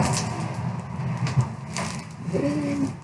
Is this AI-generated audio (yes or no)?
no